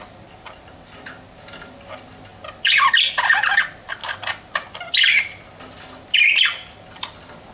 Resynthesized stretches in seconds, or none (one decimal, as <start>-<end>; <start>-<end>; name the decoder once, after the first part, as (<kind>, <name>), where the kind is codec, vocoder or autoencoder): none